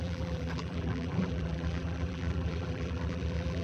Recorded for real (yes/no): no